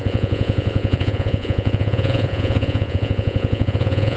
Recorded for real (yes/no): no